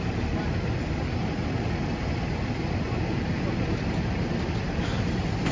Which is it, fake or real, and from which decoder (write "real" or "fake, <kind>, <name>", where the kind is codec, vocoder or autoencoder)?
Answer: real